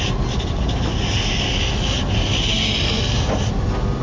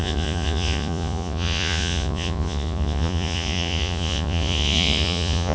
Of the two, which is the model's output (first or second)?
second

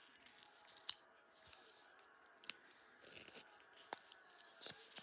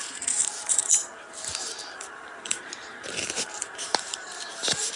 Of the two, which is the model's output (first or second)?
second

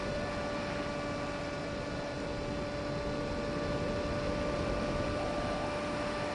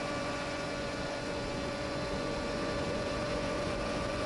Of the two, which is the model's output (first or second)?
second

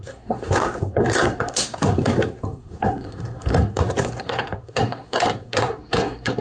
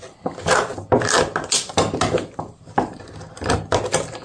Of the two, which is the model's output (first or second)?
first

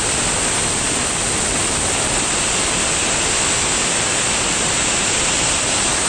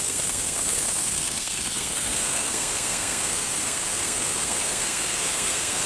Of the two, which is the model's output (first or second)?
second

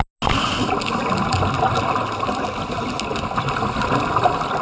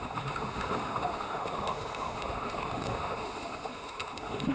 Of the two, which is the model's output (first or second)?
second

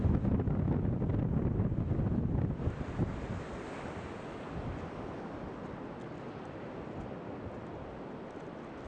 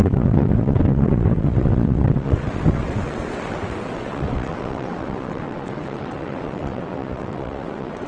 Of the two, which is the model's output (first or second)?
second